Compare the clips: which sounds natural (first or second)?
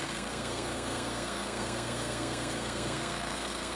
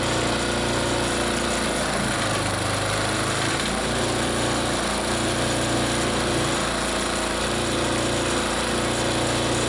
second